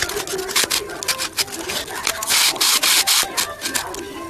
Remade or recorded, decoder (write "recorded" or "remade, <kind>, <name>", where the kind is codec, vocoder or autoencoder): recorded